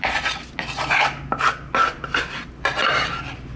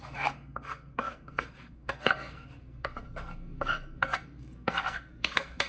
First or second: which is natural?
first